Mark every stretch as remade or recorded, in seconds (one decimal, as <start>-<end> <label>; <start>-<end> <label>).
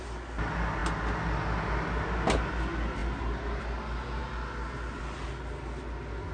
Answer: 0.0-6.3 recorded